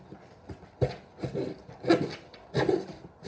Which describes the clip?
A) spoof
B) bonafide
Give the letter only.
B